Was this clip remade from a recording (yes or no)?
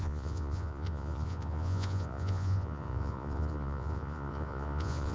yes